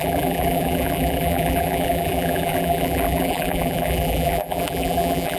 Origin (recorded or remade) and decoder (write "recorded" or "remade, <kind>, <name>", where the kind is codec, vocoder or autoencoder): remade, vocoder, BigVGAN v2